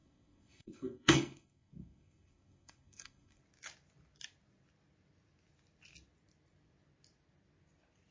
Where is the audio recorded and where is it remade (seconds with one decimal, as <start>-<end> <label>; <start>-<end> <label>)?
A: 0.0-3.4 remade; 3.4-8.1 recorded

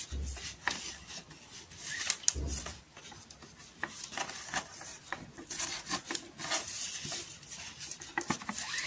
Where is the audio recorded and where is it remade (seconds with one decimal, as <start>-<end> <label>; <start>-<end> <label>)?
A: 0.0-4.9 recorded; 4.9-6.1 remade; 6.1-8.9 recorded

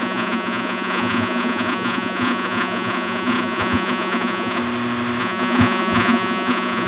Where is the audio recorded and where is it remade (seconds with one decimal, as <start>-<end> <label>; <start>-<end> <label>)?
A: 0.0-4.6 remade; 4.6-5.2 recorded; 5.2-6.9 remade

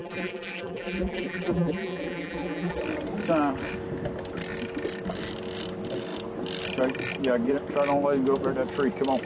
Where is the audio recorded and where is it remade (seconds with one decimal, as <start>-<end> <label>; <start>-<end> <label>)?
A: 0.0-2.8 remade; 2.8-9.3 recorded

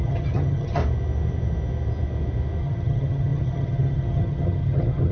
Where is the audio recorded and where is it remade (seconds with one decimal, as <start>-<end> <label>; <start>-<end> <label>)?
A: 0.0-0.8 remade; 0.8-2.6 recorded; 2.6-5.1 remade

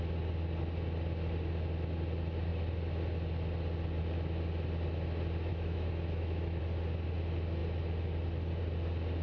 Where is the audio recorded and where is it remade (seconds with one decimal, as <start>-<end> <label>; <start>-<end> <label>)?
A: 0.0-5.5 recorded; 5.5-6.6 remade; 6.6-9.2 recorded

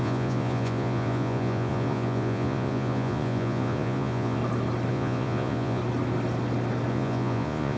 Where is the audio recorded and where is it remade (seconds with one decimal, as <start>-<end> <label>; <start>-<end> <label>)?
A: 0.0-4.4 remade; 4.4-4.9 recorded; 4.9-5.8 remade; 5.8-6.9 recorded; 6.9-7.8 remade

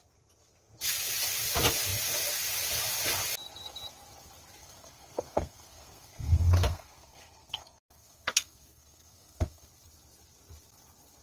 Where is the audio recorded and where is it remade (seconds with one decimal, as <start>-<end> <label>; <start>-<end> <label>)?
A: 0.0-4.6 recorded; 4.6-9.7 remade; 9.7-11.2 recorded